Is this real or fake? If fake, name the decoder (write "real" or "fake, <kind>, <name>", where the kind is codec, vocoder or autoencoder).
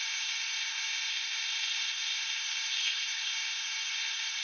fake, codec, SNAC